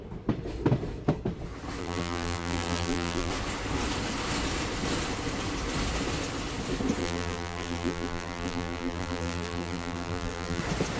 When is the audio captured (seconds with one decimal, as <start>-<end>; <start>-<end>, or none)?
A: 0.0-1.8; 3.3-7.0; 10.6-11.0